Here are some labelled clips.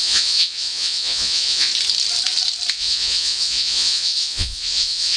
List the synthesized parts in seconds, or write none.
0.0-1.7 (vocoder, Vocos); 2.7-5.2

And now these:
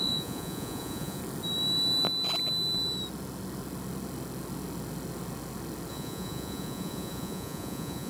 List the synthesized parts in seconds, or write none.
0.0-1.2 (vocoder, Vocos); 5.9-8.1

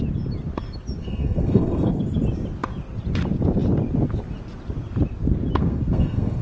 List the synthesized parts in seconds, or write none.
1.0-2.0 (codec, SNAC); 5.6-6.4